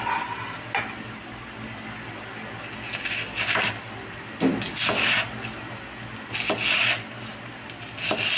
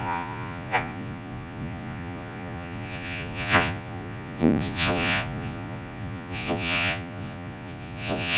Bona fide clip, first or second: first